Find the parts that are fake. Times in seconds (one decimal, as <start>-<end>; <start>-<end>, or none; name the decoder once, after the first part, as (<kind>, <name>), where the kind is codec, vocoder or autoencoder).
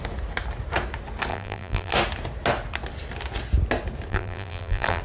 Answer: 1.3-1.9 (vocoder, BigVGAN v2); 4.1-5.0